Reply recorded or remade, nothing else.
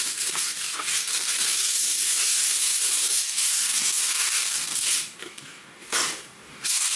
remade